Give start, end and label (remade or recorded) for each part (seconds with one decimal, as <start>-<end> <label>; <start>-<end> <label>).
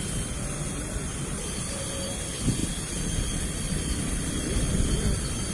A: 0.0-5.5 recorded